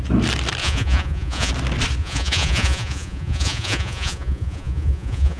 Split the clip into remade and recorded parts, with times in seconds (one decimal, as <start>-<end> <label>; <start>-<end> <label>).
0.0-0.6 recorded; 0.6-1.5 remade; 1.5-2.0 recorded; 2.0-5.4 remade